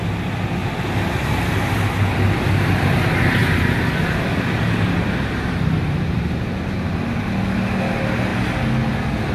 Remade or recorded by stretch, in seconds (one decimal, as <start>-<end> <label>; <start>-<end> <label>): 0.0-0.6 recorded; 0.6-1.3 remade; 1.3-9.3 recorded